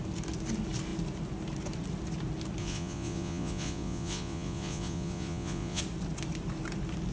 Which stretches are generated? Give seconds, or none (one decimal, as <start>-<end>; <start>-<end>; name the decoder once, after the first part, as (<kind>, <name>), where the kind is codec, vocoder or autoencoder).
2.6-5.8 (vocoder, Vocos)